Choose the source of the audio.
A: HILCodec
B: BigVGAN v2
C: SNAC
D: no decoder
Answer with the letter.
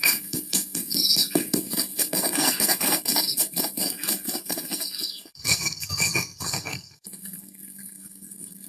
C